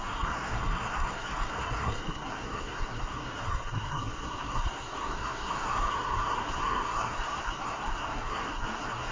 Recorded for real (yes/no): no